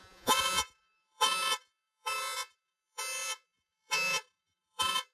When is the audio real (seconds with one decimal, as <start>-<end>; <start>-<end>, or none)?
none